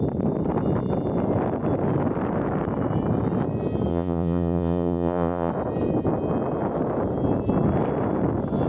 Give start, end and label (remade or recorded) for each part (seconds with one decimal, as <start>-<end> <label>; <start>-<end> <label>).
0.0-3.9 recorded; 3.9-5.5 remade; 5.5-8.7 recorded